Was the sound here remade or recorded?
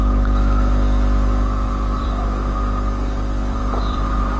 remade